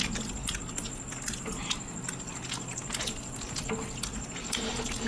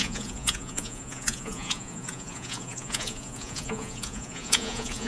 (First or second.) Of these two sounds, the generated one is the second